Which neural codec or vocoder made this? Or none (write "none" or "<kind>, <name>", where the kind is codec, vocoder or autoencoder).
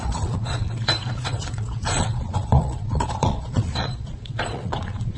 vocoder, Vocos